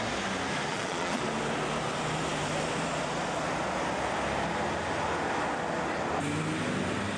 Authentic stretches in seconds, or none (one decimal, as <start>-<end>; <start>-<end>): 0.0-0.7; 1.2-7.2